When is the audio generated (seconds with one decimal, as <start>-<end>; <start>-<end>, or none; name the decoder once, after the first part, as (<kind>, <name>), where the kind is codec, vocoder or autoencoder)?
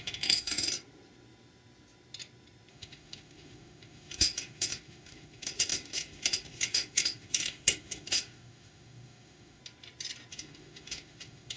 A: 0.0-0.7 (autoencoder, DAC-VAE); 2.7-9.6; 10.3-11.6